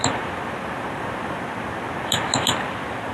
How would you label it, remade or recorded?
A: recorded